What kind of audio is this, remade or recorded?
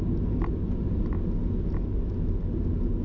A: recorded